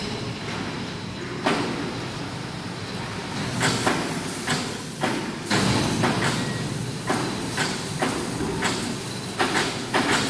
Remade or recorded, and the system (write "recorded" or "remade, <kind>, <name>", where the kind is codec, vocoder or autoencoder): recorded